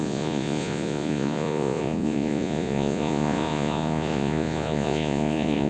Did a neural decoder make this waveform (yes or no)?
yes